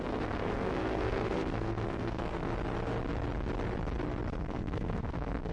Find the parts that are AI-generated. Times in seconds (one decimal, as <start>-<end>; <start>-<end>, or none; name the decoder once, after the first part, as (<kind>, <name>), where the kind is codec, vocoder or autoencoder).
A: 0.0-2.5 (codec, SNAC); 4.4-5.5